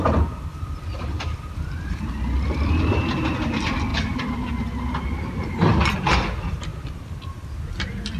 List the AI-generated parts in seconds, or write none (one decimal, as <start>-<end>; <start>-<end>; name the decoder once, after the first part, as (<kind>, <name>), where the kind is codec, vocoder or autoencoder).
0.5-2.8 (vocoder, BigVGAN v2); 6.7-7.3

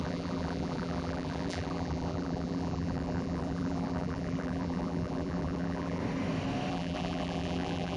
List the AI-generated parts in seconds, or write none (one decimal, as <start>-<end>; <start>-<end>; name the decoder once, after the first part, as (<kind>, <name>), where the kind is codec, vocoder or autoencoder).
0.0-6.0 (vocoder, BigVGAN v2); 6.7-8.0

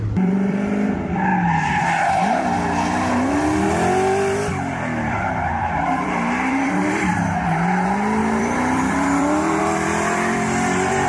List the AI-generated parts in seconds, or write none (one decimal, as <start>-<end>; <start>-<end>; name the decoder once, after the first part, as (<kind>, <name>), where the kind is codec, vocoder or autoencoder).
0.0-1.3 (vocoder, BigVGAN v2); 5.1-11.1

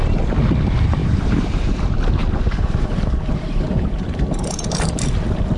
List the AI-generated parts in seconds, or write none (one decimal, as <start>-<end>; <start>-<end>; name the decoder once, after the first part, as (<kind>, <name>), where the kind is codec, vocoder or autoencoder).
1.0-1.8 (vocoder, BigVGAN v2); 2.2-5.6

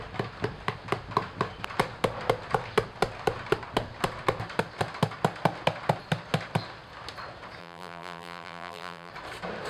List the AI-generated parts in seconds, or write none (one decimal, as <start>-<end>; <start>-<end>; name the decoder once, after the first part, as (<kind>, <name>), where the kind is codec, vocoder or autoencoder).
7.6-9.1 (vocoder, BigVGAN v2)